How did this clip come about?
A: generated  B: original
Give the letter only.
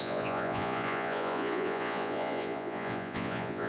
A